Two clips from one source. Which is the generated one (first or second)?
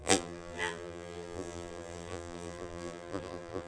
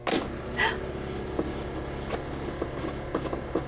first